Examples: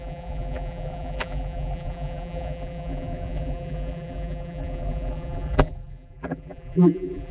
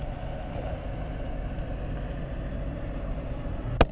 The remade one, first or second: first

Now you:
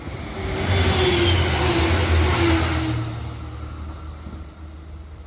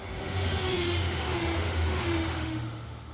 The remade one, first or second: second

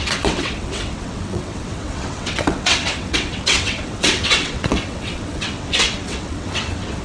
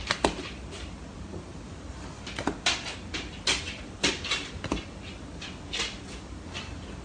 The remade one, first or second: first